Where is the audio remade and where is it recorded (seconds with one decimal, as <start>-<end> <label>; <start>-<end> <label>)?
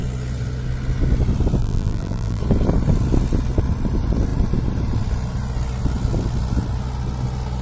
0.0-1.6 recorded; 1.6-2.4 remade; 2.4-7.6 recorded